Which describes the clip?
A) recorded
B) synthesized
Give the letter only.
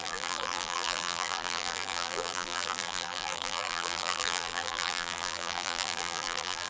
B